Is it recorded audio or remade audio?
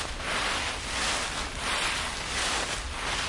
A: recorded